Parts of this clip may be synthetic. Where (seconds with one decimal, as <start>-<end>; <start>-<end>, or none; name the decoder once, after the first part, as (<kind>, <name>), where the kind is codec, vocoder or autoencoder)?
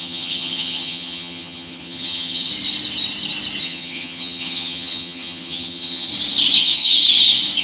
0.0-2.5 (vocoder, HiFi-GAN); 3.6-6.1; 6.6-7.0